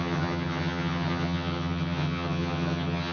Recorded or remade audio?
remade